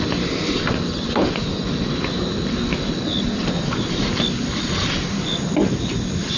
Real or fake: real